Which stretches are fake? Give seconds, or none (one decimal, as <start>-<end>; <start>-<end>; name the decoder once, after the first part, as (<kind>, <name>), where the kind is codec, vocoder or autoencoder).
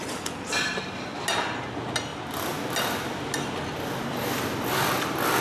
0.0-0.8 (vocoder, BigVGAN v2)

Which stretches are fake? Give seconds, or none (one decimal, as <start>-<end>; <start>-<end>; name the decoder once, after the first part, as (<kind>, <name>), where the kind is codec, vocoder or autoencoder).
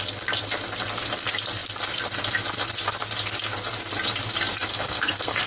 4.7-5.5 (codec, SNAC)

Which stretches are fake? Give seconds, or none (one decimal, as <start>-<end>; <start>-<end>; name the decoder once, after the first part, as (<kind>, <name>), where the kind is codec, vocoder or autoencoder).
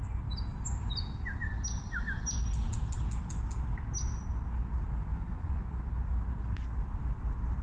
5.1-5.6 (vocoder, Vocos)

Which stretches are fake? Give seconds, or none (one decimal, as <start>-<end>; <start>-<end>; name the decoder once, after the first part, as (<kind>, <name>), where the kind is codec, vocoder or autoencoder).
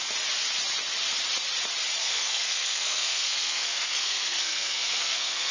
2.0-5.5 (codec, SNAC)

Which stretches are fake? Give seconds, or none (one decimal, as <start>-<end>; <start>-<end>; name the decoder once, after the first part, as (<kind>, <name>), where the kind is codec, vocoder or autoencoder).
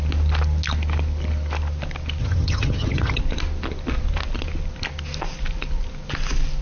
2.2-3.2 (vocoder, HiFi-GAN)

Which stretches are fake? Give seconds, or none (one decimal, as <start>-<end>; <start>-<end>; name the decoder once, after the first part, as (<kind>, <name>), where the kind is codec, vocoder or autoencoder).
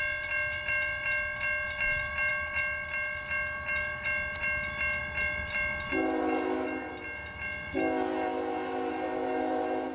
none